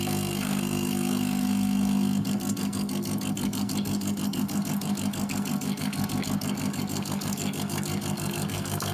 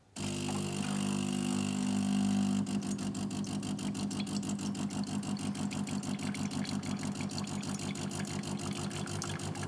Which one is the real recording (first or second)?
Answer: second